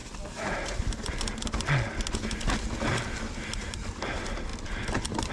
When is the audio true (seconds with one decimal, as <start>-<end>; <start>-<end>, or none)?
1.1-2.9; 4.0-5.3